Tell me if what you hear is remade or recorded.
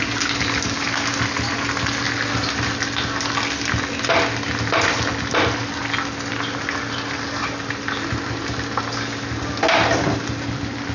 recorded